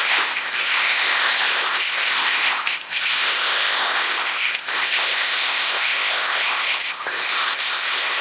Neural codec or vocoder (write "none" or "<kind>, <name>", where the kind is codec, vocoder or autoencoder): codec, ZipCodec